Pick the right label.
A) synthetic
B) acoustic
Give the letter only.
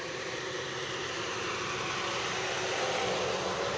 B